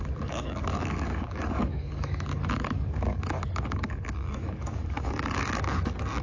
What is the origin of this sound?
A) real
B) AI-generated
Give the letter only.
B